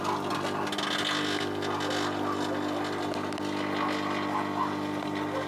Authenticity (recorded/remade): recorded